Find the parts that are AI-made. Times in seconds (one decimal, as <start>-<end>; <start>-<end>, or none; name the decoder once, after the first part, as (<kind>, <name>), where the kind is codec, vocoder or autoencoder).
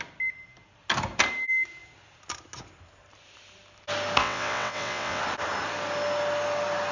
4.2-5.2 (vocoder, WaveNeXt)